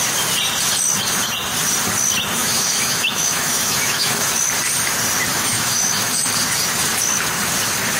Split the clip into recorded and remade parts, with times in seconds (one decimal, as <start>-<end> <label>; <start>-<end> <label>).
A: 0.0-2.4 recorded; 2.4-4.3 remade; 4.3-5.3 recorded; 5.3-6.3 remade; 6.3-8.0 recorded